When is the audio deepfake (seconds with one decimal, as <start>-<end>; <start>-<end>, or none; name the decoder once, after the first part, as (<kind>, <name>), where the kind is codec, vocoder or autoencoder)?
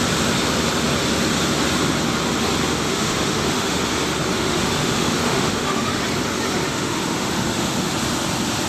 2.9-3.8 (autoencoder, DAC-VAE); 4.3-6.0; 6.7-7.9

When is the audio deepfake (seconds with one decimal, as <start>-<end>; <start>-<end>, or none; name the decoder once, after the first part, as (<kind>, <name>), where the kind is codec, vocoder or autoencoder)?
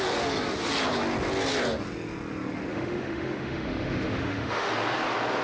2.7-4.7 (autoencoder, DAC-VAE)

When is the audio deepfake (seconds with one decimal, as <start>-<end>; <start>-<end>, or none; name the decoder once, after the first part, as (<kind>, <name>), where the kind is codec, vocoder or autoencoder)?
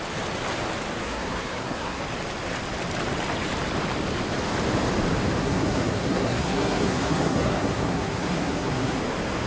1.0-2.0 (codec, SNAC); 5.4-9.0